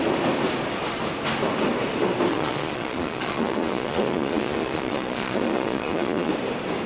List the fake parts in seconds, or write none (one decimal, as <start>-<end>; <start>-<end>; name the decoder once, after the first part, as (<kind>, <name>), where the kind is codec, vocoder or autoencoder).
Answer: 2.3-6.3 (vocoder, Vocos)